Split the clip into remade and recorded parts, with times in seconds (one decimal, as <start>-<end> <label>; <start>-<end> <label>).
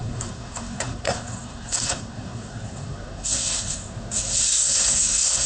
0.0-5.5 remade